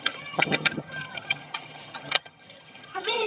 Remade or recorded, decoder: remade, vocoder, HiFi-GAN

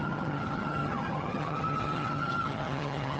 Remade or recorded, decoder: remade, vocoder, HiFi-GAN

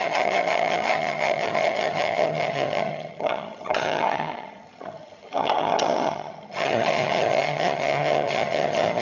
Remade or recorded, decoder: remade, vocoder, HiFi-GAN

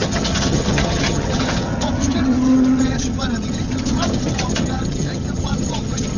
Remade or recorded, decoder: remade, vocoder, HiFi-GAN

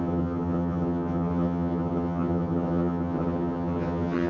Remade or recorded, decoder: remade, vocoder, HiFi-GAN